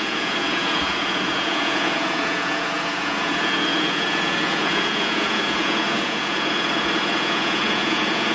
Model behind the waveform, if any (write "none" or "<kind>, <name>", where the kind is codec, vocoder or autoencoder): vocoder, Vocos